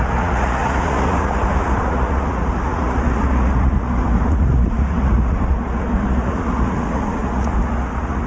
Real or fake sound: fake